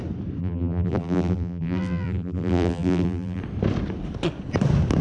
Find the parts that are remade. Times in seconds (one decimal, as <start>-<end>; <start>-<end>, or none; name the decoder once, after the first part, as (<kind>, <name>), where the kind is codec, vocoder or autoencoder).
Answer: 0.4-3.4 (vocoder, BigVGAN v2)

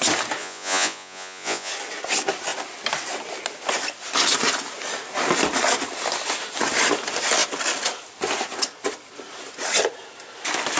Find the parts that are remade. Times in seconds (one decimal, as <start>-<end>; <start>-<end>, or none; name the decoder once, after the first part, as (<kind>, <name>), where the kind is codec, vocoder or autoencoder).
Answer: 0.4-1.7 (vocoder, Vocos)

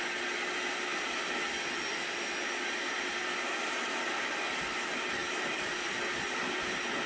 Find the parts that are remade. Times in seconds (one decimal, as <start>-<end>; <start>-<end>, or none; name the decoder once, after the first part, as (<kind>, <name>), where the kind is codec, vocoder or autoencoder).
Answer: none

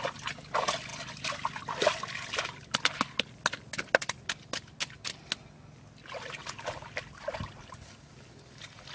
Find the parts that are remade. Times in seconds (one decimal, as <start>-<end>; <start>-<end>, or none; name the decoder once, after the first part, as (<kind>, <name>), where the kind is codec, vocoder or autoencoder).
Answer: none

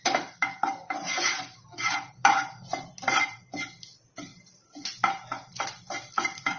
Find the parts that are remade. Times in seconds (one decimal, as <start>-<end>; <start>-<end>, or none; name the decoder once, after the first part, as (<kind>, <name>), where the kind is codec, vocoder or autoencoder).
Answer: none

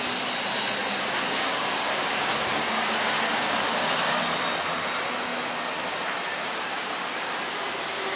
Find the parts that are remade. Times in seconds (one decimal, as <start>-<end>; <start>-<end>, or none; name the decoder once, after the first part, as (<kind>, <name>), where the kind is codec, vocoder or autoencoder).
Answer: 0.8-4.2 (codec, DAC); 6.7-7.4

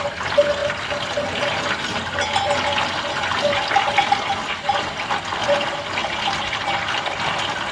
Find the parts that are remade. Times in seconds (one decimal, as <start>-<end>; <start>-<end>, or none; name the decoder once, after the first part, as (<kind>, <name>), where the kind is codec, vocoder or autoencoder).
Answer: none

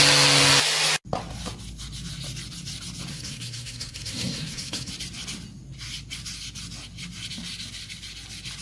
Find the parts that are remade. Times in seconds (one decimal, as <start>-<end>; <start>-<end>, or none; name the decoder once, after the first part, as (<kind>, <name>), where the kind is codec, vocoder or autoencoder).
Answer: 3.1-4.9 (codec, SNAC)